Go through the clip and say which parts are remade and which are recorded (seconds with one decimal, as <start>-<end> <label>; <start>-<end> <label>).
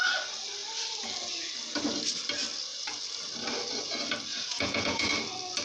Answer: 0.0-4.3 recorded; 4.3-5.1 remade; 5.1-5.6 recorded